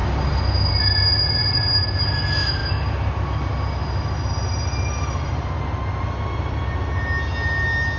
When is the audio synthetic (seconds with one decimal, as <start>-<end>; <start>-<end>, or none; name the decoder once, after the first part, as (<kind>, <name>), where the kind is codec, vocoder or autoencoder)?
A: none